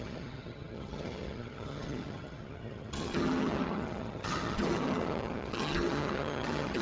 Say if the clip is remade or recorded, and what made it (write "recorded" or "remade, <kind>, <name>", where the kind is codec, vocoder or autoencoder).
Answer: remade, vocoder, HiFi-GAN